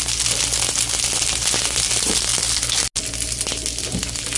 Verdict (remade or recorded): recorded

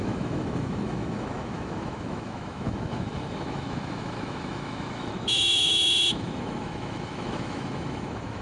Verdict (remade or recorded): remade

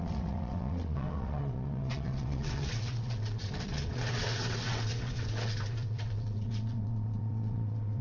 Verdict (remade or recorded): remade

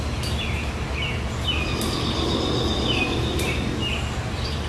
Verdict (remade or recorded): recorded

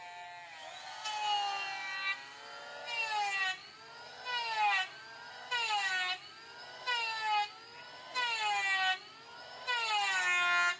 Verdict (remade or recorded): recorded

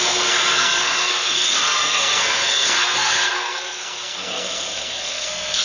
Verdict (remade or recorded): remade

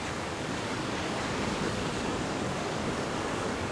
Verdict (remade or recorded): remade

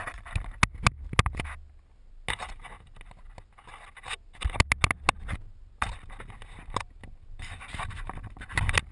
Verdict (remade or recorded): recorded